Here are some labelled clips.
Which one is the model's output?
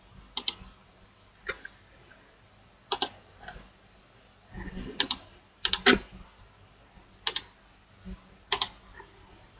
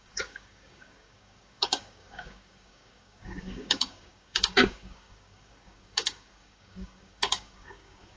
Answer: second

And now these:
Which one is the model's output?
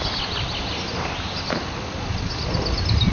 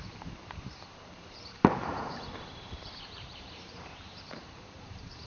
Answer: second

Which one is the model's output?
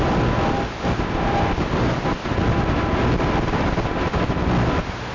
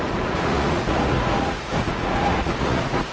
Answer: second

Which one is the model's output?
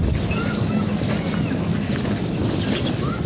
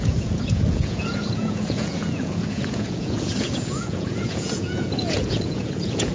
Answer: second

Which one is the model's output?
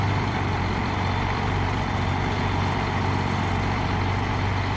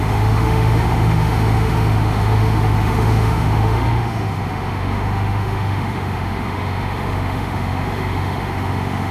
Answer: second